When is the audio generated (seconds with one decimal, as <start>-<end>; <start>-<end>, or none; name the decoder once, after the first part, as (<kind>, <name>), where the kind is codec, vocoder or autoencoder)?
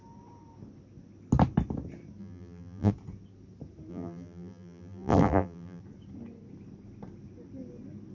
2.2-2.9 (vocoder, BigVGAN v2); 3.9-5.8